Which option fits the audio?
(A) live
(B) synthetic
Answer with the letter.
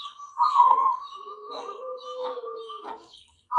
B